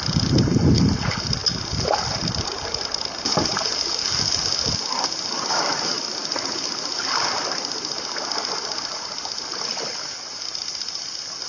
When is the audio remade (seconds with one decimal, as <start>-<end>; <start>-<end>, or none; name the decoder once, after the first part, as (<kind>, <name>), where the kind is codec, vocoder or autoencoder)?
none